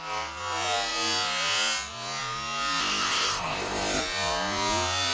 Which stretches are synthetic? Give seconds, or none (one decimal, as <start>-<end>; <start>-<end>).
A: 2.8-4.0